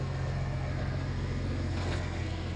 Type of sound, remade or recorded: remade